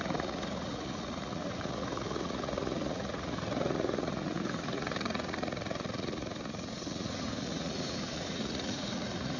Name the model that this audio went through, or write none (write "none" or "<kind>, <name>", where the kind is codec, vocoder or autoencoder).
vocoder, Vocos